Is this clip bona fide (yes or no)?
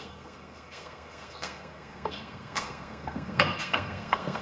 no